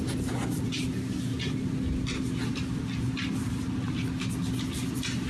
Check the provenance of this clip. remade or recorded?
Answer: recorded